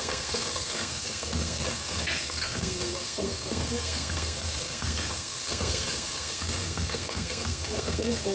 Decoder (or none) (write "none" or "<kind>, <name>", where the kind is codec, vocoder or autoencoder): codec, SNAC